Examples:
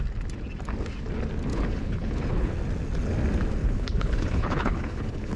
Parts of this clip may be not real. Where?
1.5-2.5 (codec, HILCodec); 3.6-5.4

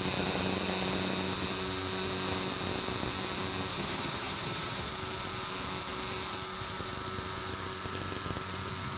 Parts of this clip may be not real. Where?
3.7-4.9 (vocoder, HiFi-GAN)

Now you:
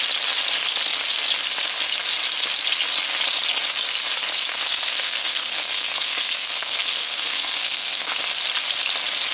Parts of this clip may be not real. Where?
4.5-8.2 (codec, SNAC)

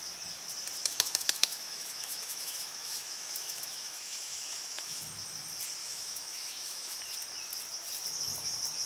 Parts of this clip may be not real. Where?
0.8-5.0 (autoencoder, DAC-VAE); 5.8-7.0

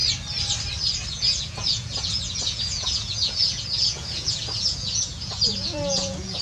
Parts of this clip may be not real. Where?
1.1-6.4 (vocoder, Vocos)